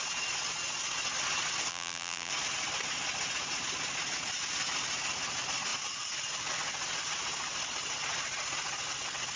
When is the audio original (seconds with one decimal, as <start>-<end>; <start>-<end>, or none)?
0.0-1.7; 2.3-9.4